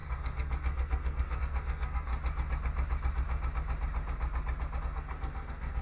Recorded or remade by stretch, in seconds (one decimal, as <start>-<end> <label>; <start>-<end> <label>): 0.0-2.1 remade; 2.1-4.8 recorded; 4.8-5.8 remade